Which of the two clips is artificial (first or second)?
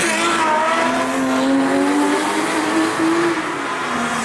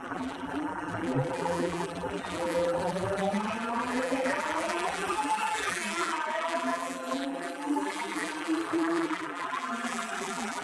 second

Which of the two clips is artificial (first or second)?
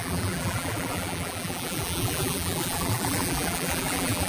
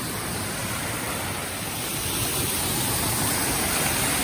first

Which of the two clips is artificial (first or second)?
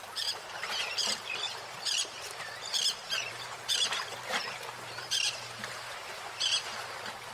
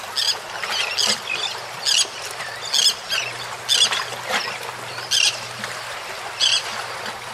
first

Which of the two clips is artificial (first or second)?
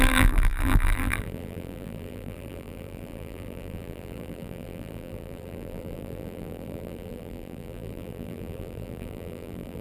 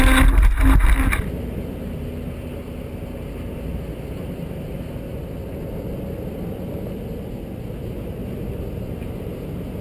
first